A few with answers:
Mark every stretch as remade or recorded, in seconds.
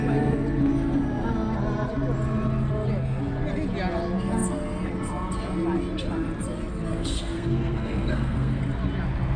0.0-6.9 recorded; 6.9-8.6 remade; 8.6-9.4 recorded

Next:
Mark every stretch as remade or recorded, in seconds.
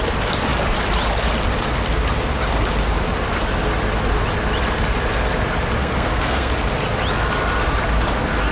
0.0-5.8 recorded; 5.8-6.5 remade; 6.5-8.5 recorded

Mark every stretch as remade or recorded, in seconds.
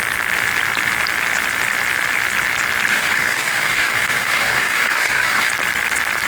0.0-2.9 recorded; 2.9-5.5 remade; 5.5-6.3 recorded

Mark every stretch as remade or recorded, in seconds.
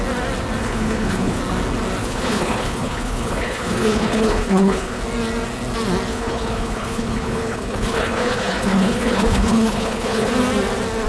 0.0-0.6 recorded; 0.6-1.4 remade; 1.4-2.0 recorded; 2.0-5.0 remade; 5.0-6.1 recorded; 6.1-10.3 remade; 10.3-11.1 recorded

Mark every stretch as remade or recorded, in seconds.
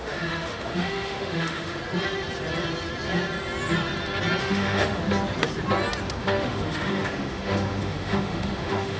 0.0-1.8 remade; 1.8-4.4 recorded; 4.4-5.0 remade; 5.0-6.2 recorded; 6.2-9.0 remade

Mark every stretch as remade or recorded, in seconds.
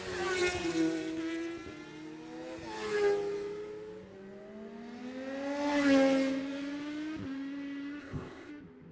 0.0-8.0 recorded; 8.0-8.5 remade; 8.5-8.9 recorded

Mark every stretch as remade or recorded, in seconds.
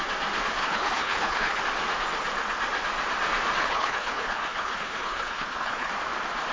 0.0-0.6 recorded; 0.6-1.6 remade; 1.6-3.6 recorded; 3.6-5.9 remade; 5.9-6.5 recorded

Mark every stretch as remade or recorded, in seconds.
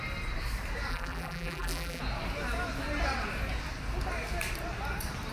0.0-0.9 recorded; 0.9-2.0 remade; 2.0-5.3 recorded